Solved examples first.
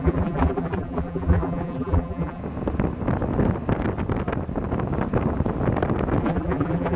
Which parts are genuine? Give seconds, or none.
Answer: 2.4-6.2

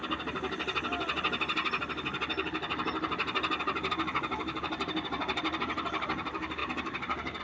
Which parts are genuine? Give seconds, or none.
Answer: 0.0-3.9

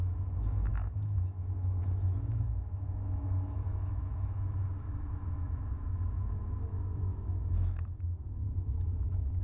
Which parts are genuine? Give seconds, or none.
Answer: none

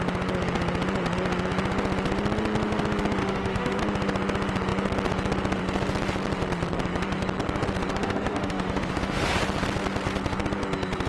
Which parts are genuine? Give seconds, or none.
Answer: 0.0-3.2; 3.8-7.9; 9.2-11.1